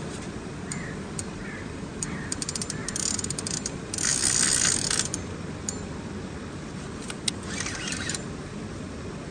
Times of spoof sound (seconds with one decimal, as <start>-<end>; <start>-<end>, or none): 0.0-2.8; 3.5-4.1